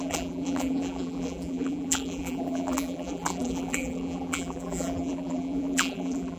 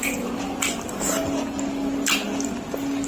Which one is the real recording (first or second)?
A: second